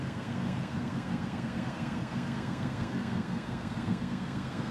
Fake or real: fake